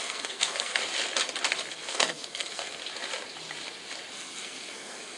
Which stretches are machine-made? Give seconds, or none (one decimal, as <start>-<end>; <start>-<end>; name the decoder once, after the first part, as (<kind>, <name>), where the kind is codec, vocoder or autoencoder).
0.0-0.8 (codec, SNAC); 1.7-2.8; 4.1-5.2